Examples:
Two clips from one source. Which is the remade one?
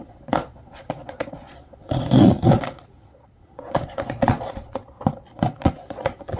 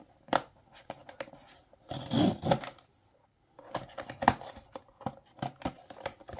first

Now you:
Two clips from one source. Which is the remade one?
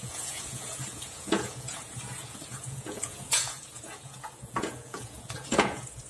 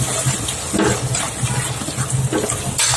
first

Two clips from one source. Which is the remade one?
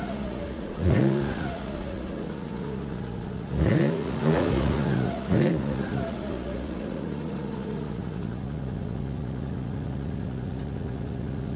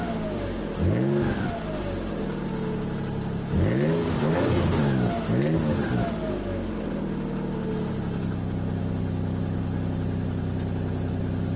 first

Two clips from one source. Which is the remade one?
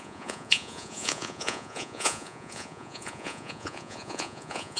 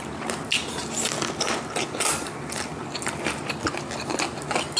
first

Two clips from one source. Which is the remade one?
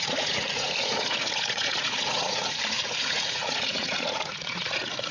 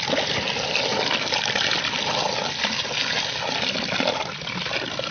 first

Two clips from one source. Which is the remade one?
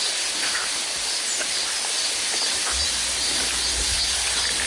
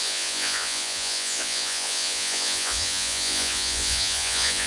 second